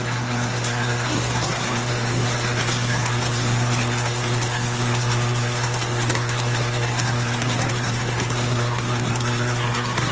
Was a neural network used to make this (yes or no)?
yes